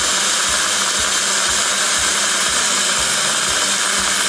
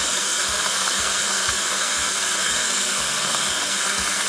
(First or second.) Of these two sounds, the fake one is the second